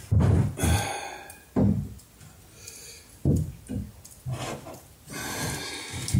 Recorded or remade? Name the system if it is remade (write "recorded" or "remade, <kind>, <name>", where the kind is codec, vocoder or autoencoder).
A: recorded